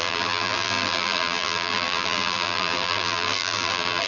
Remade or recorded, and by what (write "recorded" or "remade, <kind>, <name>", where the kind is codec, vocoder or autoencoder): remade, vocoder, BigVGAN v2